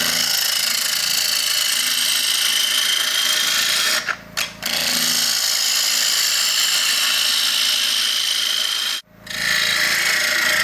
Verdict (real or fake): real